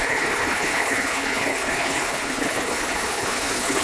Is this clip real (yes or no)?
no